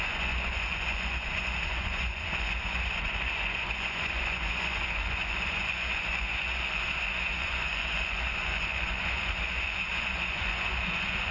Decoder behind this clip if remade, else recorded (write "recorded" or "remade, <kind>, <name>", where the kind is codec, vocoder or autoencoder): remade, vocoder, Vocos